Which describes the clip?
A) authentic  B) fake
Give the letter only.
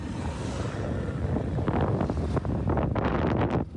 A